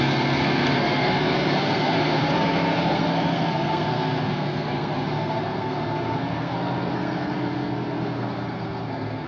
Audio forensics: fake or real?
fake